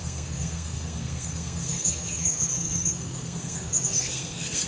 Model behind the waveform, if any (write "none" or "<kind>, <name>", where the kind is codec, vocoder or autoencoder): codec, SNAC